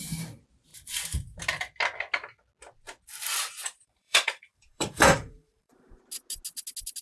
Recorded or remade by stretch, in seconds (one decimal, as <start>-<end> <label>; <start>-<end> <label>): 0.0-3.6 recorded; 3.6-6.0 remade; 6.0-7.0 recorded